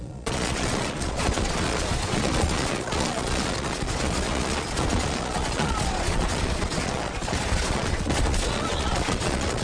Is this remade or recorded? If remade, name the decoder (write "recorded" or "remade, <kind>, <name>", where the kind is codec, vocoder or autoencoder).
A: remade, vocoder, Vocos